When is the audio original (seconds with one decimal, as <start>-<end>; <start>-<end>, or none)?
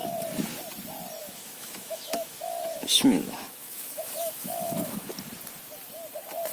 0.0-1.2; 5.1-6.5